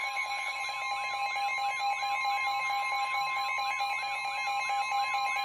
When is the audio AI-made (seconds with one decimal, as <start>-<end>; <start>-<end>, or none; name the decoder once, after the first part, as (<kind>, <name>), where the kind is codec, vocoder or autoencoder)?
0.0-0.6 (autoencoder, DAC-VAE); 2.6-3.4